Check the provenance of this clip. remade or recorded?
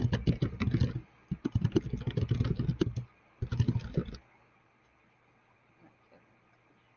recorded